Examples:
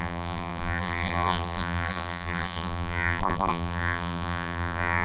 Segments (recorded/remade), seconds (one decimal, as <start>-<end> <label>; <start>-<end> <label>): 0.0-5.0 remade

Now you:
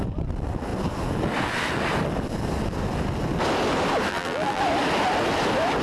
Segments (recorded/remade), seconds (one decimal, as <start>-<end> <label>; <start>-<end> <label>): 0.0-4.1 recorded; 4.1-4.6 remade; 4.6-5.8 recorded

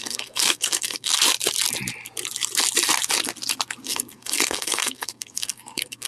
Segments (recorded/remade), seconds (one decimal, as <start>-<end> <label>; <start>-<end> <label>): 0.0-1.1 remade; 1.1-3.8 recorded; 3.8-6.1 remade

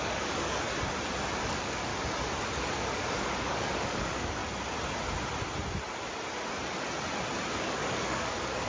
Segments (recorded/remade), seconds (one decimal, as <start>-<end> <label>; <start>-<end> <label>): 0.0-0.7 remade; 0.7-1.4 recorded; 1.4-1.9 remade; 1.9-2.5 recorded; 2.5-4.4 remade; 4.4-7.6 recorded; 7.6-8.7 remade

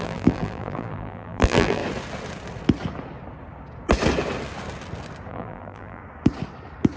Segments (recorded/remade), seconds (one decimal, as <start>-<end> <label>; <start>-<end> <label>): 0.0-1.8 remade; 1.8-5.3 recorded; 5.3-6.0 remade; 6.0-7.0 recorded

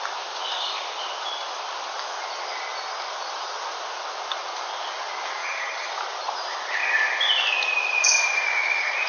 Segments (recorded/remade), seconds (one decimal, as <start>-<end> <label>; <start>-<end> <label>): 0.0-5.4 recorded; 5.4-5.9 remade; 5.9-9.1 recorded

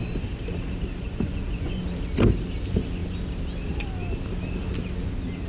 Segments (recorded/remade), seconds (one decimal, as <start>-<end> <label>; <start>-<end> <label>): 0.0-1.0 recorded; 1.0-1.8 remade; 1.8-5.5 recorded

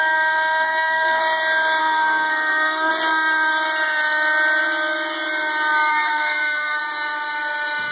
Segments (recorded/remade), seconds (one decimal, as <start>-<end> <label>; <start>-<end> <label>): 0.0-1.2 remade; 1.2-1.8 recorded; 1.8-2.9 remade; 2.9-5.9 recorded; 5.9-6.8 remade; 6.8-7.9 recorded